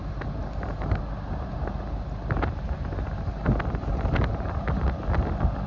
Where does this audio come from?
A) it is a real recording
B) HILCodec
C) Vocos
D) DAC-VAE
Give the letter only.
A